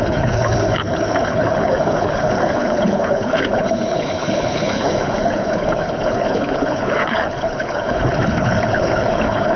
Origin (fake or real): fake